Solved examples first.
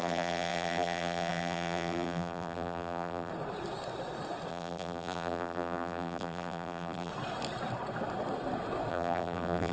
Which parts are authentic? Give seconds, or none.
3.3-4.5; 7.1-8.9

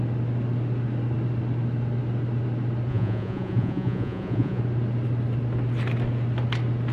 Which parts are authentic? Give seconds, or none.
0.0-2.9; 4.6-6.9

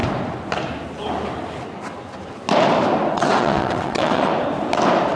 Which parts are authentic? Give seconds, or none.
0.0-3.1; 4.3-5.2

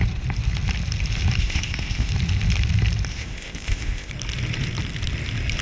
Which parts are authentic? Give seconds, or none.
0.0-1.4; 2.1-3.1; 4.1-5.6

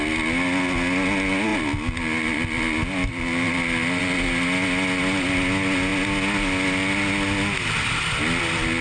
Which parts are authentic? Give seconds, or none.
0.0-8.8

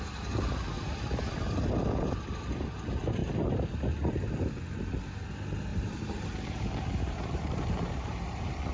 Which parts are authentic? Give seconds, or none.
0.0-3.2; 4.6-5.7

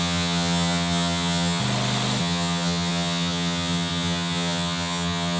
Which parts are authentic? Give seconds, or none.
1.6-2.2